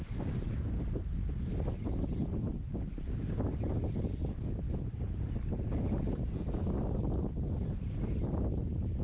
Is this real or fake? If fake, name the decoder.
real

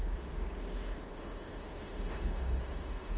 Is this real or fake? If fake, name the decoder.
fake, autoencoder, DAC-VAE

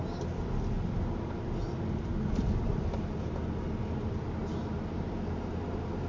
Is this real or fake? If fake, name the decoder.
real